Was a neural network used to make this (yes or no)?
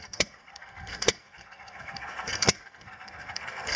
yes